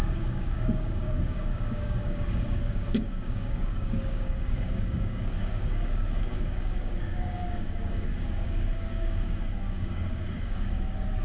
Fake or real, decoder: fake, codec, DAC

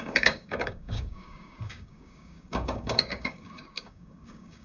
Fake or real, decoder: fake, codec, DAC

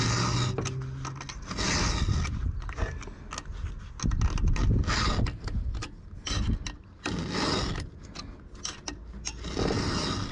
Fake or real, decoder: real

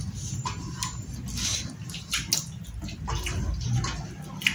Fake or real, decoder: real